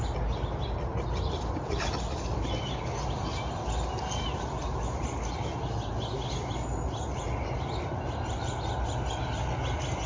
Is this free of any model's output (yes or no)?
yes